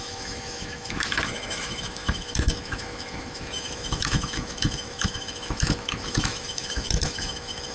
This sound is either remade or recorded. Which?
remade